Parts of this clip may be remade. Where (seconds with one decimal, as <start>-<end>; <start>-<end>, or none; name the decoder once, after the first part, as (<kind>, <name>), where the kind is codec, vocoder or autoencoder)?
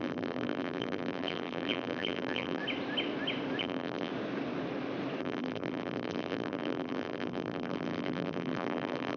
0.0-2.6 (vocoder, BigVGAN v2); 3.6-4.1; 5.2-9.2